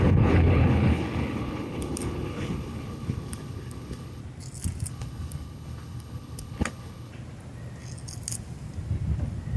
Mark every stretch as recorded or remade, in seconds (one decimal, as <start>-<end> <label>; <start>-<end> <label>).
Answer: 0.0-4.2 remade; 4.2-4.9 recorded; 4.9-7.1 remade; 7.1-9.6 recorded